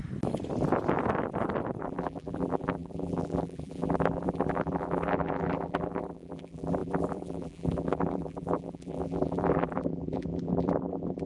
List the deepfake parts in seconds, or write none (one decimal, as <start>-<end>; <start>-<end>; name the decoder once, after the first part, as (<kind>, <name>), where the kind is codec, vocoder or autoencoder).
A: 1.8-11.3 (vocoder, BigVGAN v2)